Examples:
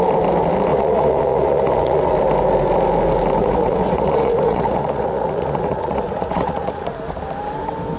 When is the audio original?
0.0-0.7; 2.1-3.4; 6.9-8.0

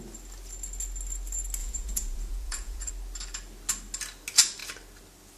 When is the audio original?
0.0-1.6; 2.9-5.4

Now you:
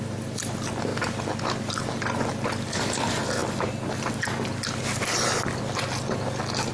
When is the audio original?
0.0-6.7

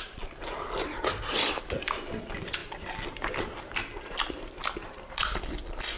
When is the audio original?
0.0-6.0

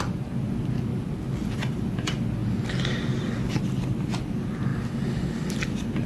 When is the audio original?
0.0-6.1

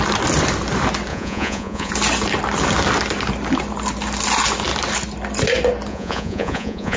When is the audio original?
0.0-1.1; 1.9-5.9